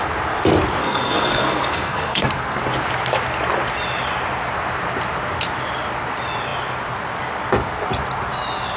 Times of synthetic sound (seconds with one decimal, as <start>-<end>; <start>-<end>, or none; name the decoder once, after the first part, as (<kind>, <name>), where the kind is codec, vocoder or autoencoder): 0.8-2.6 (codec, SNAC)